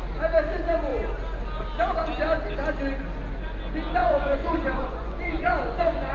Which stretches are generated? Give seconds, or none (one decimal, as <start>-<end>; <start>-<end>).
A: 4.0-6.1